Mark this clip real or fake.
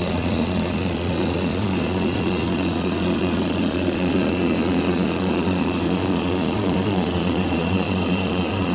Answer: fake